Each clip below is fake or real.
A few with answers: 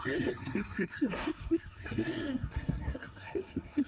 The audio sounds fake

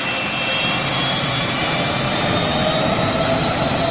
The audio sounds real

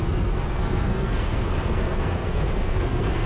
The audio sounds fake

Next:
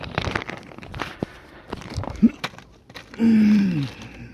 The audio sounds fake